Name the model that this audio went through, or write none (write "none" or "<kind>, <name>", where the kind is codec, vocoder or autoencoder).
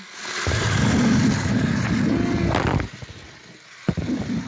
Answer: none